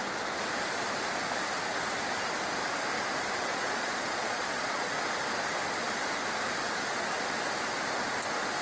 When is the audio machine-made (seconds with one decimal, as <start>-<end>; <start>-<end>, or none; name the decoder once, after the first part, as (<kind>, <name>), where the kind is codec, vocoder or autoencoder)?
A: 3.5-4.9 (vocoder, Vocos)